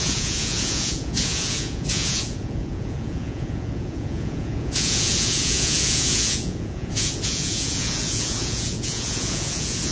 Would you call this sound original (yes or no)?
no